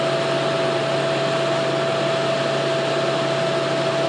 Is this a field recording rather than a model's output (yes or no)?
yes